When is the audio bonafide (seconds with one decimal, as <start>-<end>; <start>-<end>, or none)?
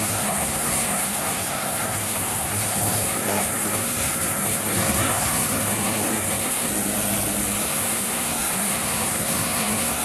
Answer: 6.7-7.6